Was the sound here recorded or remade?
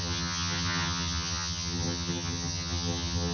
remade